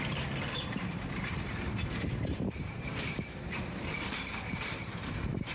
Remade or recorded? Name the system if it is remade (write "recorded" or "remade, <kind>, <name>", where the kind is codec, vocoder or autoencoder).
remade, vocoder, BigVGAN v2